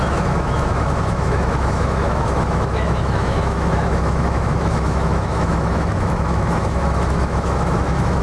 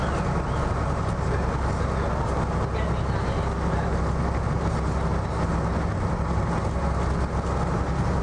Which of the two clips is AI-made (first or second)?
first